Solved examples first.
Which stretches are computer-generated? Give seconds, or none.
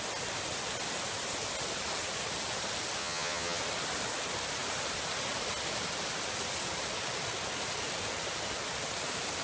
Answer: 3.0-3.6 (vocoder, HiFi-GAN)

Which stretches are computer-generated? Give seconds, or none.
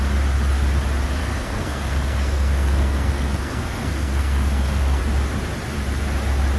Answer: 1.2-5.0 (codec, SNAC)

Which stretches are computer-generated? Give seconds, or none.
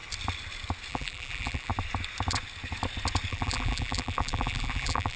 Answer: 0.9-1.7 (vocoder, BigVGAN v2); 3.3-5.2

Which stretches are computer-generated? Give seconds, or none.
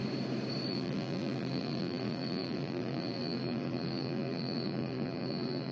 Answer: 0.7-5.7 (vocoder, BigVGAN v2)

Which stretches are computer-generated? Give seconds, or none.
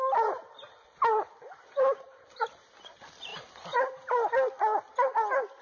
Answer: none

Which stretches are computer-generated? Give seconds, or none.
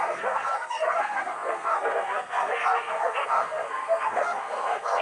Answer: 0.0-5.0 (codec, SNAC)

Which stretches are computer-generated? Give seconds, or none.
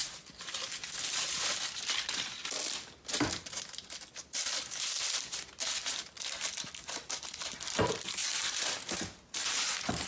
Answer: 0.0-2.4 (vocoder, BigVGAN v2); 4.2-7.2; 8.2-9.0